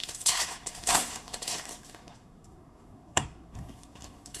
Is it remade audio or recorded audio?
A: remade